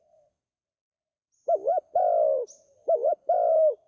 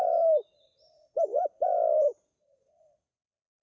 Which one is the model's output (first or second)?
second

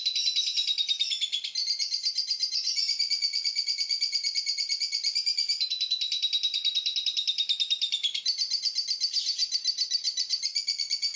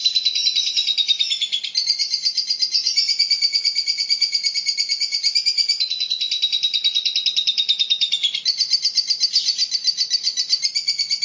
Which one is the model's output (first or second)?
first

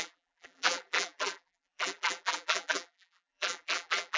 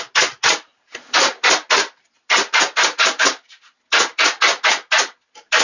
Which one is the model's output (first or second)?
first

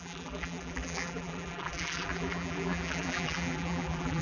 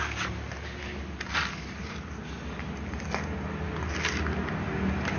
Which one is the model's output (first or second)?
first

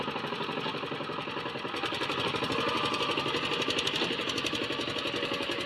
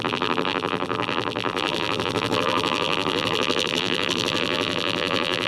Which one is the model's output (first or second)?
second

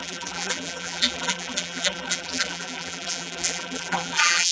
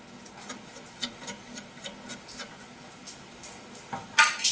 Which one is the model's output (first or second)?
first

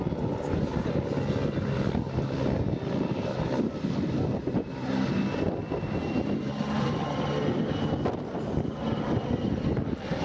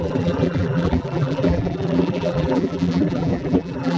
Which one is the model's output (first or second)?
second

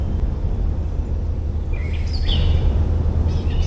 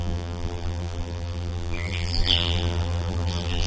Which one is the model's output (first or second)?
second